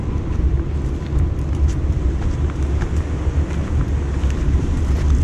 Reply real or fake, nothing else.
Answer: real